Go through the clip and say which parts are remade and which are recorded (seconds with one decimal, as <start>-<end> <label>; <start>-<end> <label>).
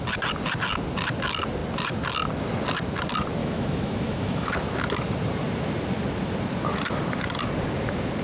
0.0-3.4 recorded; 3.4-4.5 remade; 4.5-8.2 recorded